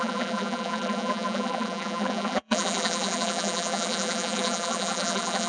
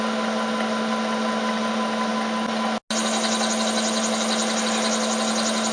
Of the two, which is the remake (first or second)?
first